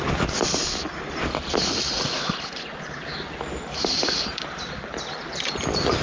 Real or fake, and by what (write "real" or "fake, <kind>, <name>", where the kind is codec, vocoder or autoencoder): real